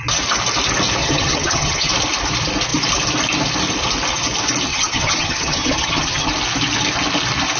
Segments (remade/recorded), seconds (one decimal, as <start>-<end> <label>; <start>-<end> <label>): 0.0-1.0 recorded; 1.0-1.9 remade; 1.9-4.7 recorded; 4.7-6.3 remade; 6.3-7.6 recorded